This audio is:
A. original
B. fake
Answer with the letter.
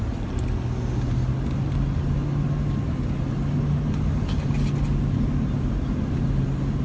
A